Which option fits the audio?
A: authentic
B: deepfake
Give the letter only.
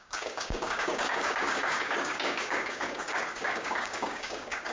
B